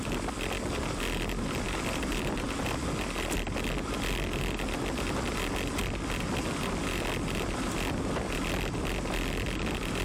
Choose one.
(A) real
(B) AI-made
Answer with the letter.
A